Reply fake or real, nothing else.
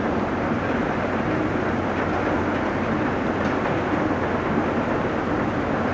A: real